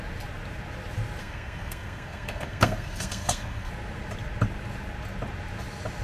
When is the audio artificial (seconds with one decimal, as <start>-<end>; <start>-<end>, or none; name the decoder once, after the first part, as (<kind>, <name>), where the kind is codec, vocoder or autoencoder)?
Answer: 1.2-3.7 (codec, SNAC)